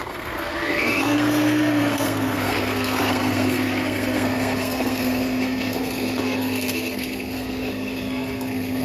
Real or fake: fake